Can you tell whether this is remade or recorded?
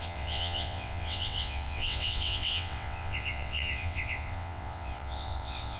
remade